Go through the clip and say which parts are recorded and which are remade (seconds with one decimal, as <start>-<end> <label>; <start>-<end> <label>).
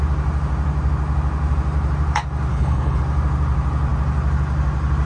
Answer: 0.0-2.5 recorded; 2.5-3.0 remade; 3.0-5.1 recorded